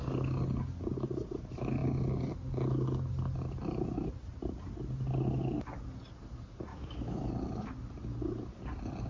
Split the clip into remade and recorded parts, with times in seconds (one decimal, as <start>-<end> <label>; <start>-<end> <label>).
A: 0.0-6.7 recorded; 6.7-7.3 remade; 7.3-9.1 recorded